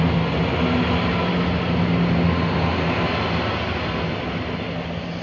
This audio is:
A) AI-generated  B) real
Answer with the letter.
B